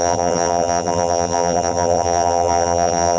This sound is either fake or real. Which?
fake